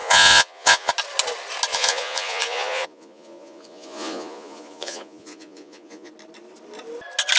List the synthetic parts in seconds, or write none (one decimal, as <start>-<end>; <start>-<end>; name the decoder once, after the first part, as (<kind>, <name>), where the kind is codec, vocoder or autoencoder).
0.0-0.9 (vocoder, Vocos); 1.7-6.1